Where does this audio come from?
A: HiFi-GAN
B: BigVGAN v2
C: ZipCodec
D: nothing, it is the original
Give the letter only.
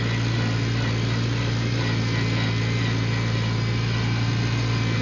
D